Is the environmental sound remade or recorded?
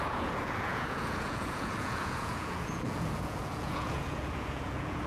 remade